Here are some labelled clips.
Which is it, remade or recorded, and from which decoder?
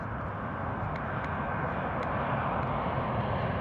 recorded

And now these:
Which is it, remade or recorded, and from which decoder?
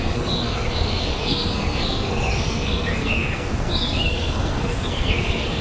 remade, codec, SNAC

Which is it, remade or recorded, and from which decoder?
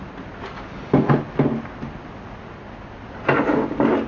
recorded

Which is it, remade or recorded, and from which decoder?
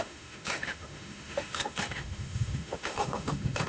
remade, autoencoder, DAC-VAE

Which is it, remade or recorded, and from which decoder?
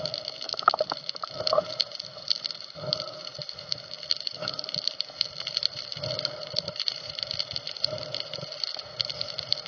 remade, autoencoder, DAC-VAE